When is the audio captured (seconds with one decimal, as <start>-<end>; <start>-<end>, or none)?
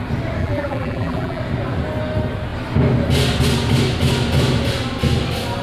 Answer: 0.0-0.4; 1.4-5.6